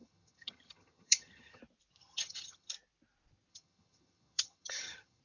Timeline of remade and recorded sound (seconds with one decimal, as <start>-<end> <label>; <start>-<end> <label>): 0.0-1.6 remade; 1.6-2.0 recorded; 2.0-2.7 remade; 2.7-3.5 recorded; 3.5-5.2 remade